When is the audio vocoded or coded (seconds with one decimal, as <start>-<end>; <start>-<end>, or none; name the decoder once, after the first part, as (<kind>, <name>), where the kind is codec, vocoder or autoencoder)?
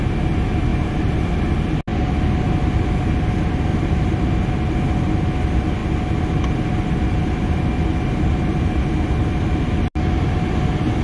0.7-1.5 (vocoder, BigVGAN v2); 3.7-4.5